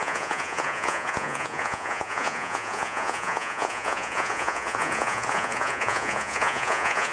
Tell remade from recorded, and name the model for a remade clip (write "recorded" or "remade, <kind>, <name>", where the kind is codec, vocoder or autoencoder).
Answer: remade, vocoder, Vocos